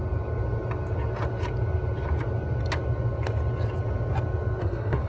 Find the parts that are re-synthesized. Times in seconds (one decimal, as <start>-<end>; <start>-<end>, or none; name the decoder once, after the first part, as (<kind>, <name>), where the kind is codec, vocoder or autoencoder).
4.6-5.1 (codec, SNAC)